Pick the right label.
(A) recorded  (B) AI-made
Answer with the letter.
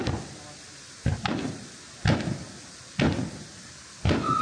A